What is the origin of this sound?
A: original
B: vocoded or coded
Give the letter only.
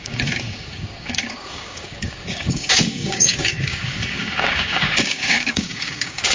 B